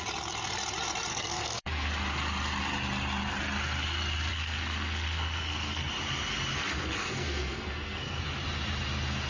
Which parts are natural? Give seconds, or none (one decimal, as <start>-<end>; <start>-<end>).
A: 0.0-1.1; 1.9-4.3; 5.9-6.6; 8.2-9.3